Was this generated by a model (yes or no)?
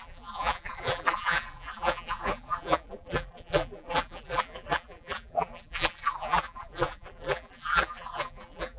yes